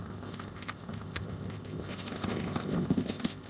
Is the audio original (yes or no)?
no